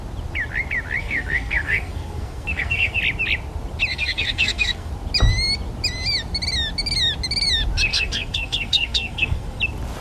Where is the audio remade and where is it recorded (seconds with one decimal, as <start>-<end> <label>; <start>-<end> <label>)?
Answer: 0.0-1.0 recorded; 1.0-3.0 remade; 3.0-3.9 recorded; 3.9-4.9 remade; 4.9-7.9 recorded; 7.9-9.6 remade; 9.6-10.0 recorded